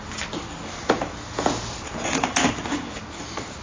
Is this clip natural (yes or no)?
yes